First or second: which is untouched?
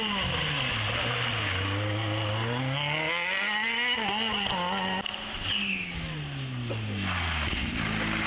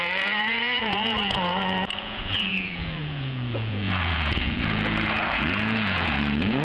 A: first